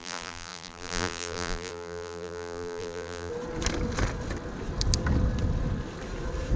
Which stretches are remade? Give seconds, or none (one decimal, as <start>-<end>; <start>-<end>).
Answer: 0.0-3.3